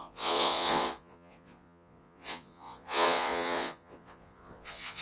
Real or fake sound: fake